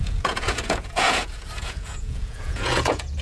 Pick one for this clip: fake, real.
fake